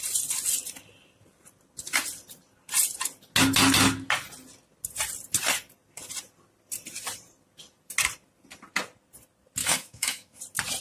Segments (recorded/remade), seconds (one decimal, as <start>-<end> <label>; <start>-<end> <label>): 0.0-9.6 recorded; 9.6-10.4 remade; 10.4-10.8 recorded